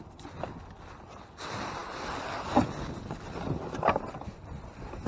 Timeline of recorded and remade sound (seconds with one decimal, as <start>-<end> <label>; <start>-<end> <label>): 0.0-5.1 recorded